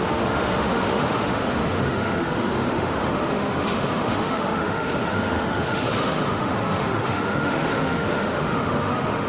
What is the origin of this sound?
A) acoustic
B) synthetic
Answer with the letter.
B